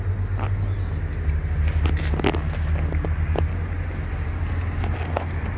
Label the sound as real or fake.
real